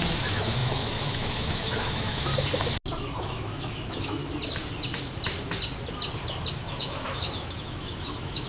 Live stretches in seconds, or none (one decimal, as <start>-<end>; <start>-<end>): 2.3-3.2; 4.2-6.5